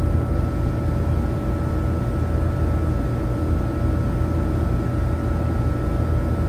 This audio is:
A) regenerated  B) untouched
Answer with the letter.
B